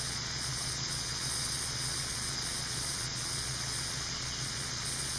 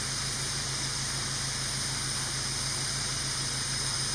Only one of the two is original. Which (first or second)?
second